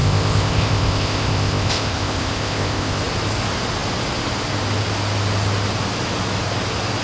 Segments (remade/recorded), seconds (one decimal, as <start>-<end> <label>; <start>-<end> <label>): 0.0-3.0 remade; 3.0-7.0 recorded